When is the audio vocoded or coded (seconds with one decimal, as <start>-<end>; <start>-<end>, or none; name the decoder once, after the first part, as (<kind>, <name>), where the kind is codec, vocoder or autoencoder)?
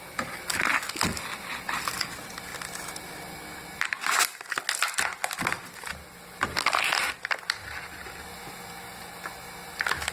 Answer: none